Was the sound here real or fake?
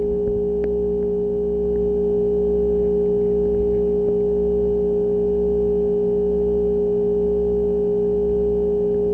real